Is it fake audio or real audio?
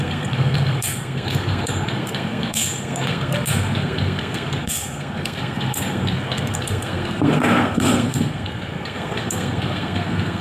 fake